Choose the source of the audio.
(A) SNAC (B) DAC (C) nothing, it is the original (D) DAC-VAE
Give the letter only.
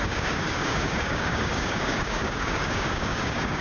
B